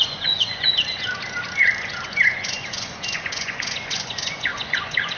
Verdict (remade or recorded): remade